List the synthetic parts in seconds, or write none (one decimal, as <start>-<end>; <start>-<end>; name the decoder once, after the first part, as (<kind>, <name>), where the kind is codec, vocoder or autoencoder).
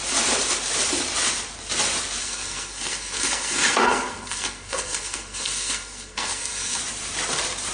2.2-6.8 (codec, SNAC)